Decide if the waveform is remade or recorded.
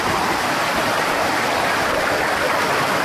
recorded